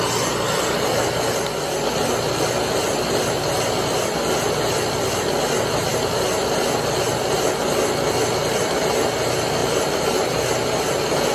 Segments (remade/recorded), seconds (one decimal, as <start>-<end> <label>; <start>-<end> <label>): 0.0-9.6 recorded; 9.6-10.4 remade; 10.4-11.3 recorded